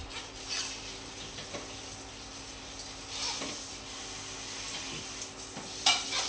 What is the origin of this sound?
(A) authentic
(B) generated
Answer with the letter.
A